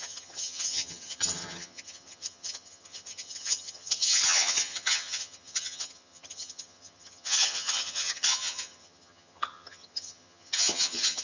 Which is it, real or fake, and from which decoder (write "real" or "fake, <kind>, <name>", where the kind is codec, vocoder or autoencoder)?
fake, vocoder, HiFi-GAN